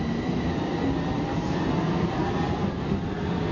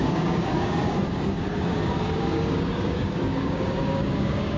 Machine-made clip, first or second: second